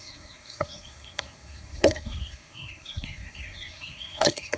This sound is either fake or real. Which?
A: fake